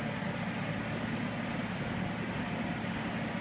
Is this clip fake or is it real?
real